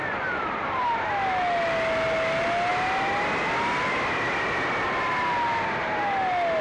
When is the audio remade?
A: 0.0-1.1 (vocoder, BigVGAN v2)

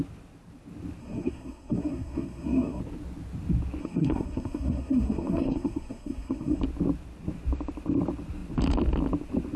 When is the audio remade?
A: 1.0-2.8 (codec, SNAC); 3.8-6.6

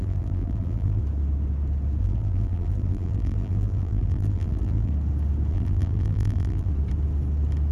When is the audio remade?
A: 0.0-1.0 (vocoder, BigVGAN v2); 2.0-4.9; 5.5-6.7

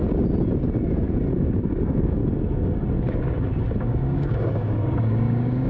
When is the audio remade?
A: 1.3-2.2 (codec, DAC); 3.8-5.7

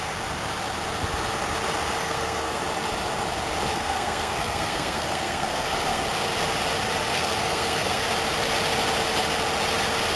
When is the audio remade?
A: 2.0-2.6 (codec, SNAC); 3.7-6.0; 7.1-8.0

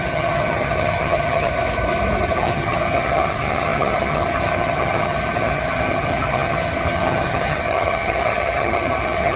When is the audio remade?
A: 0.0-1.5 (vocoder, HiFi-GAN); 2.3-9.4